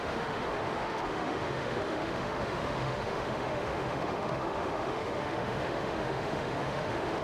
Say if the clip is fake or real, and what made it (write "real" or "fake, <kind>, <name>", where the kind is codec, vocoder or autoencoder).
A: fake, autoencoder, DAC-VAE